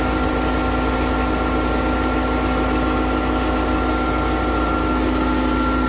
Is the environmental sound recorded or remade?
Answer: recorded